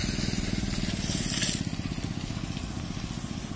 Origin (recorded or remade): recorded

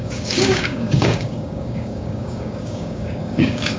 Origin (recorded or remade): remade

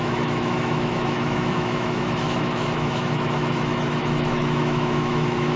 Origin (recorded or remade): remade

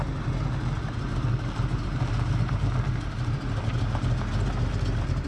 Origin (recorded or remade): recorded